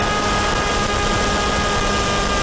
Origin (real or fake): real